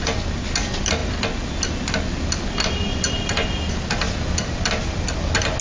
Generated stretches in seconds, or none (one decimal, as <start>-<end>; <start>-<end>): none